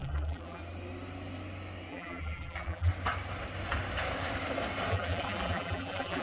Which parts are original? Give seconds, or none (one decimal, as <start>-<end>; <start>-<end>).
0.6-1.9; 2.9-4.9